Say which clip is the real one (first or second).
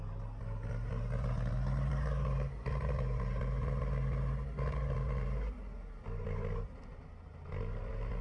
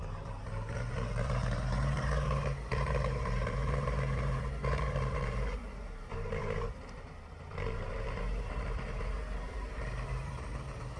first